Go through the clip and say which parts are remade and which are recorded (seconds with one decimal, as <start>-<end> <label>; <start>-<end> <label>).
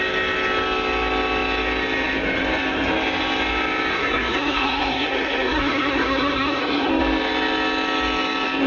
0.0-3.9 recorded; 3.9-6.9 remade; 6.9-8.7 recorded